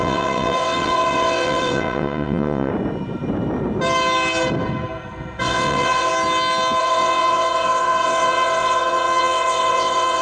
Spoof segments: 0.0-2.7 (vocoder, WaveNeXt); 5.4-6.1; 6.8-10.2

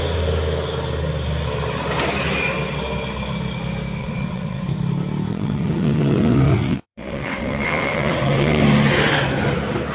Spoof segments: 4.0-4.7 (vocoder, WaveNeXt); 5.3-8.6

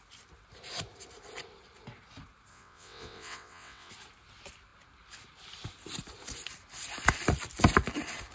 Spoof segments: 2.5-3.9 (vocoder, WaveNeXt)

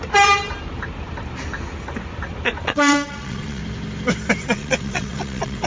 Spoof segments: 2.6-3.6 (vocoder, WaveNeXt); 4.4-5.7

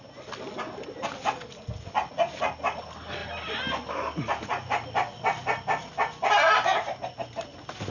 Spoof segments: none

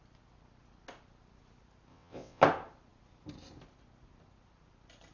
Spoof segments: 1.9-2.4 (vocoder, WaveNeXt)